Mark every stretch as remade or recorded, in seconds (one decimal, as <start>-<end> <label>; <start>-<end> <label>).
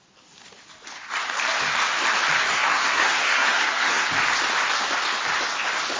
0.0-2.5 recorded; 2.5-4.1 remade; 4.1-6.0 recorded